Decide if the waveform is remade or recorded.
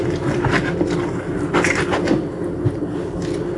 recorded